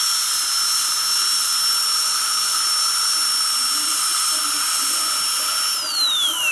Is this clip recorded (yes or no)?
yes